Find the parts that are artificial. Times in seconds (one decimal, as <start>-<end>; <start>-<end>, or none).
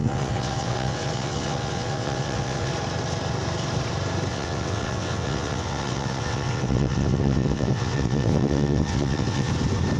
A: 0.0-2.7; 4.3-9.5